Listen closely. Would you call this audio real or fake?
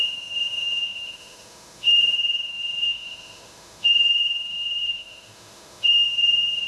fake